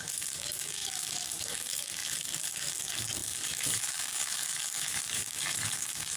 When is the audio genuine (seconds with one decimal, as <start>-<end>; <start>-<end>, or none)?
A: none